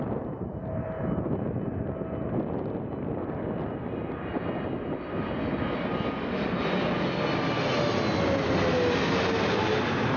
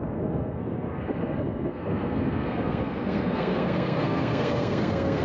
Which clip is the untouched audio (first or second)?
first